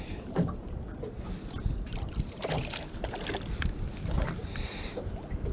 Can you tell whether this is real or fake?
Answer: real